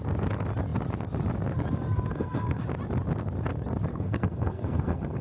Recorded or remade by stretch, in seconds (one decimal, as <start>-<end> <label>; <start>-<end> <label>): 0.0-2.1 recorded; 2.1-2.6 remade; 2.6-3.9 recorded; 3.9-5.2 remade